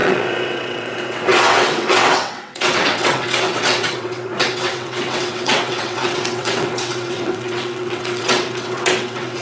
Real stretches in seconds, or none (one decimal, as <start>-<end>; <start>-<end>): none